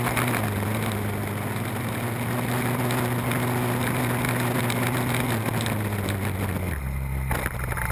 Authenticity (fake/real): real